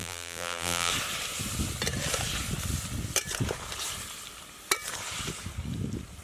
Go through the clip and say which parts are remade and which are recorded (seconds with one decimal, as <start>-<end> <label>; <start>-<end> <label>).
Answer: 0.0-0.9 remade; 0.9-6.2 recorded